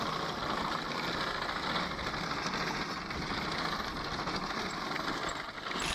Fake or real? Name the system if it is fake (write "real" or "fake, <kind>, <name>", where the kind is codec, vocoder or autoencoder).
real